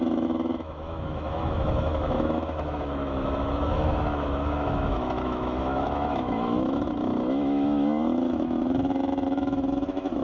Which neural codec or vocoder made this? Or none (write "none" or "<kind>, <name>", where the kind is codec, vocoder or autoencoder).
autoencoder, DAC-VAE